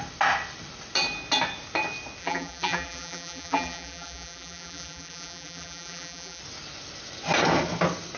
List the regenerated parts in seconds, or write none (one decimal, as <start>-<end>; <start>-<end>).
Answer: 2.2-6.4